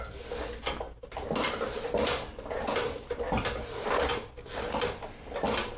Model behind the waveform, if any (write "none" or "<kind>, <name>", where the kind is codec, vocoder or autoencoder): none